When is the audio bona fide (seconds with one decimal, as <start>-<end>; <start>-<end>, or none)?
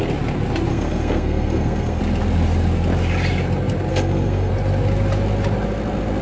0.0-0.7; 2.0-3.9; 4.5-6.2